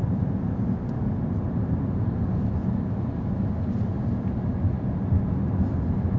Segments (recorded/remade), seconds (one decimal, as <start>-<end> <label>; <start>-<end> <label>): 0.0-6.2 recorded